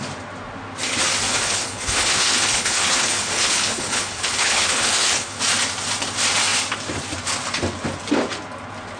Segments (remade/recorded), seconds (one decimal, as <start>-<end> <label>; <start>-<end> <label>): 0.0-1.3 recorded; 1.3-5.4 remade; 5.4-9.0 recorded

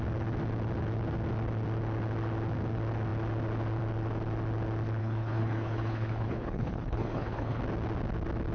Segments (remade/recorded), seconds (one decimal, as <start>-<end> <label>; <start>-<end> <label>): 0.0-5.0 recorded; 5.0-7.6 remade; 7.6-8.5 recorded

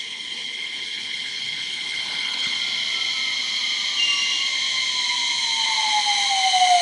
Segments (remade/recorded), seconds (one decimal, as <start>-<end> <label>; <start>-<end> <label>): 0.0-2.6 remade; 2.6-6.8 recorded

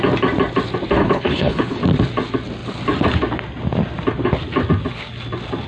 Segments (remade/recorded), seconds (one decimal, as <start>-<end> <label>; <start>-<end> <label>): 0.0-1.0 recorded; 1.0-1.8 remade; 1.8-5.7 recorded

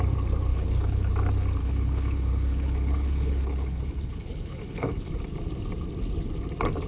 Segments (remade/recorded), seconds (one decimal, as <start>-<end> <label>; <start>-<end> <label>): 0.0-0.5 recorded; 0.5-1.1 remade; 1.1-1.6 recorded; 1.6-5.1 remade; 5.1-6.9 recorded